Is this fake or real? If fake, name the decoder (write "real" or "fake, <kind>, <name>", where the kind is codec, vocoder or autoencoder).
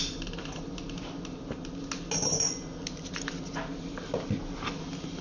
real